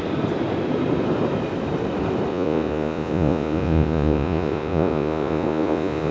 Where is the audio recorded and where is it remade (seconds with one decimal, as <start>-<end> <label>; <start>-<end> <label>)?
0.0-2.3 recorded; 2.3-6.1 remade